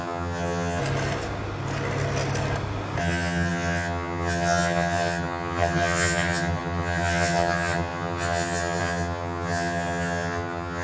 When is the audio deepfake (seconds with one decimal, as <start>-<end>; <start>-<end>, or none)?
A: 0.0-0.8; 3.0-10.8